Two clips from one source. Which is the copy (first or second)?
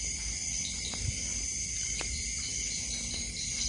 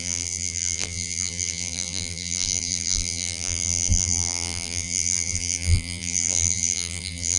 second